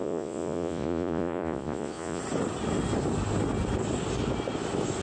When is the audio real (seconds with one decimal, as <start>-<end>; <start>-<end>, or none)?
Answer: 2.2-5.0